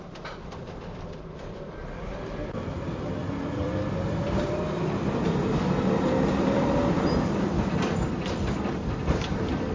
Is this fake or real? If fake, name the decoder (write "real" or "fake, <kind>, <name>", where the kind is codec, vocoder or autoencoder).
fake, vocoder, BigVGAN v2